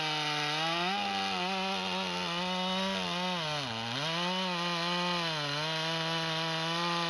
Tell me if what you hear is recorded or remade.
recorded